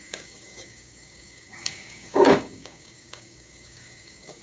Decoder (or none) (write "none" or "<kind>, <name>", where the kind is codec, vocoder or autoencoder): codec, DAC